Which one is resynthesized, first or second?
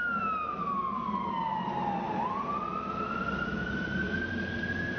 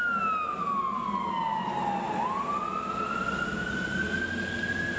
first